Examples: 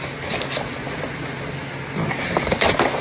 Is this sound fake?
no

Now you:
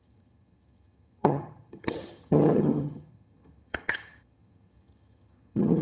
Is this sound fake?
yes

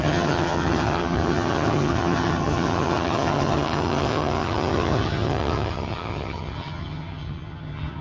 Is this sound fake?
yes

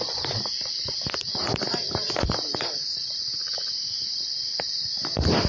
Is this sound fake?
no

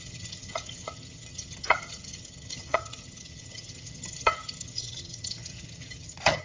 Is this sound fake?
yes